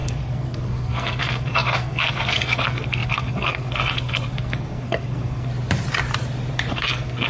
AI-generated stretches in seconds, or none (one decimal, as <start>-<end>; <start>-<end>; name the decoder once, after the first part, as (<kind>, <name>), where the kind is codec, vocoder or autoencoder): 0.0-5.5 (codec, SNAC); 6.7-7.3